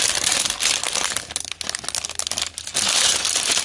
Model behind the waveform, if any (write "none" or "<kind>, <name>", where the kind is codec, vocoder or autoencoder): none